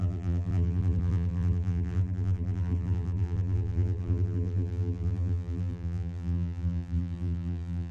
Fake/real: fake